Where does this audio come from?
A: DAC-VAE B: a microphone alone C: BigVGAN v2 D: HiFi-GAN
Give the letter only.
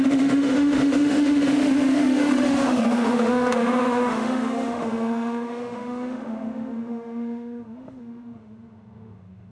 A